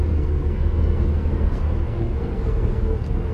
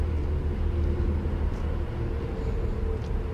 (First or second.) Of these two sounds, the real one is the second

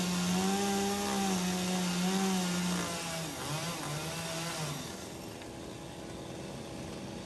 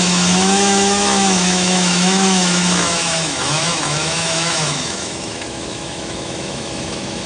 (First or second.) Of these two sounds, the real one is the first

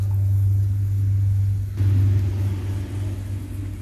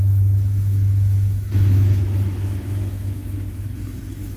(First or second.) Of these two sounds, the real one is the first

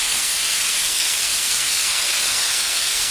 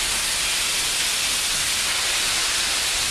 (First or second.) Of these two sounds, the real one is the second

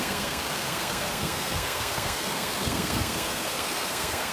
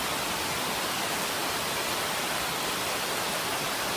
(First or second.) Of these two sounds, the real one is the second